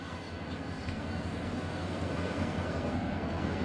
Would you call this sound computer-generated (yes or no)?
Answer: yes